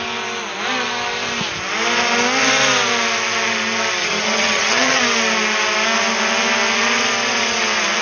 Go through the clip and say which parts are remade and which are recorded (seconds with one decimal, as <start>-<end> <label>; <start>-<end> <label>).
0.0-4.0 recorded; 4.0-5.0 remade; 5.0-8.0 recorded